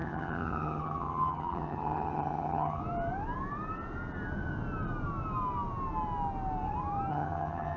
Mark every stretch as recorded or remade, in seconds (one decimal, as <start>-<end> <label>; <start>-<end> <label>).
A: 0.0-2.8 remade; 2.8-7.1 recorded; 7.1-7.8 remade